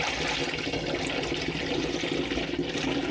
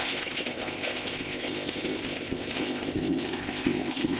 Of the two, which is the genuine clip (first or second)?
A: first